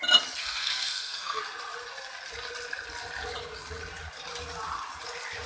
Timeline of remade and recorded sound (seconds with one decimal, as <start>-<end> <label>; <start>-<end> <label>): 0.0-0.4 recorded; 0.4-1.4 remade; 1.4-5.5 recorded